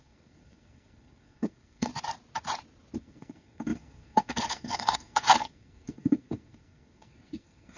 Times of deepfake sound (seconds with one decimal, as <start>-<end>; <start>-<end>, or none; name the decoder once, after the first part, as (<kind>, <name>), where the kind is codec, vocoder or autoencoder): 0.0-1.9 (codec, SNAC); 3.0-7.8